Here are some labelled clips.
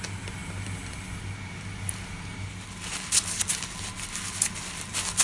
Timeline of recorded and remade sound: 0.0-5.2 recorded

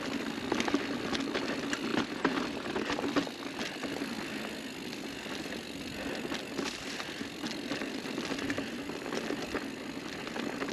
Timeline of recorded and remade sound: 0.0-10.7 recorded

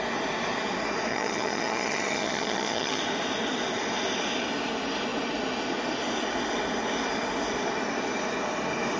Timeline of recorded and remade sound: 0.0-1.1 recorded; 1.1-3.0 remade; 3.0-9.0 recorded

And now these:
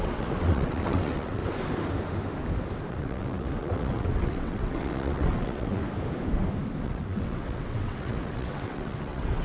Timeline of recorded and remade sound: 0.0-1.4 remade; 1.4-2.9 recorded; 2.9-5.8 remade; 5.8-6.8 recorded; 6.8-9.4 remade